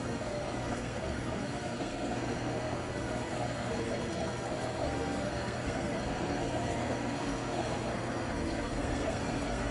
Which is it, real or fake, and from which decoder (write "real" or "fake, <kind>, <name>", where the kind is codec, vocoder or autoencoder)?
fake, codec, SNAC